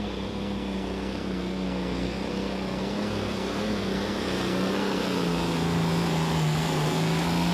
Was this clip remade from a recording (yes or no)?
yes